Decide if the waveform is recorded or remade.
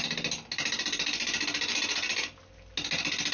recorded